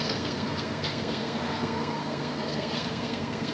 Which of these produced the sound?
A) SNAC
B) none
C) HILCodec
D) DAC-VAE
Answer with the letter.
A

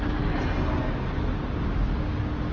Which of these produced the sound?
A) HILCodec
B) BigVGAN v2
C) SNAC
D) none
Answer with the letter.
D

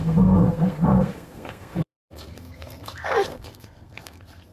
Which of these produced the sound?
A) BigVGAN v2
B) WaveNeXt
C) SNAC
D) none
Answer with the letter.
C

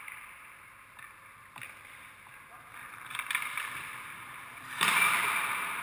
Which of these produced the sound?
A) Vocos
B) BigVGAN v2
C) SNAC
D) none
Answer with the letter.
D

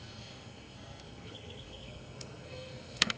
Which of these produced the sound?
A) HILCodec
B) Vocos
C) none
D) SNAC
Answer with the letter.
D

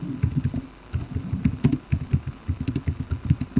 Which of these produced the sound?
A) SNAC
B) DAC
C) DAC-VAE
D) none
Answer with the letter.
D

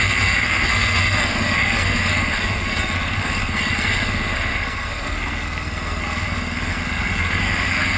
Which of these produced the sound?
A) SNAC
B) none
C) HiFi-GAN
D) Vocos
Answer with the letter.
A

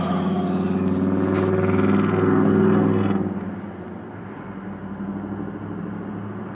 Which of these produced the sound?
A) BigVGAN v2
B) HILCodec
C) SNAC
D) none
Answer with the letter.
D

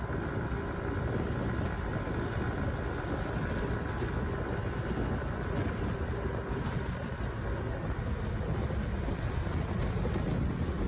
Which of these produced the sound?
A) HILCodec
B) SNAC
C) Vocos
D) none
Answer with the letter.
D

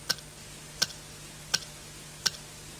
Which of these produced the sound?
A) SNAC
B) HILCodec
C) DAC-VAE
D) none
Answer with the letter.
D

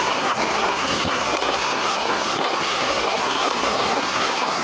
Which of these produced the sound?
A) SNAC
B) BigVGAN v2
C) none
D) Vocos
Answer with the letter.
A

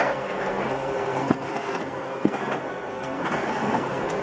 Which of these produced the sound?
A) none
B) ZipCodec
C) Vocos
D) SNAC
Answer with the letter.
D